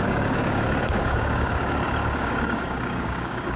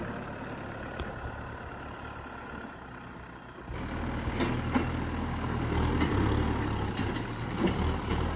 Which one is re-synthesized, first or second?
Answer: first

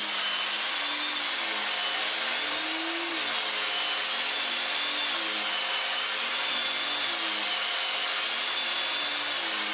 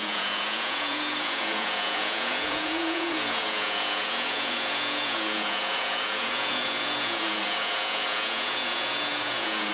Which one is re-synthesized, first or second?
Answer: second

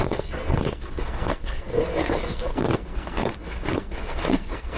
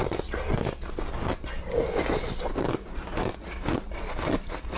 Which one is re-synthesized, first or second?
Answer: first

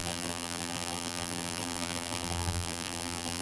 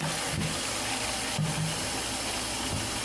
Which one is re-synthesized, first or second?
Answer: first